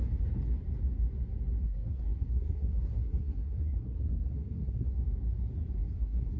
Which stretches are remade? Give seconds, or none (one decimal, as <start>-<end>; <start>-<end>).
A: 1.6-5.0; 5.8-6.4